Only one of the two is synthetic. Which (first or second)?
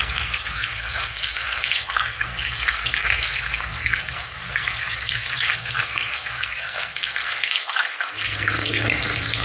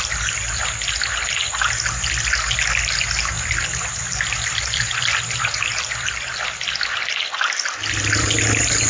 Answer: first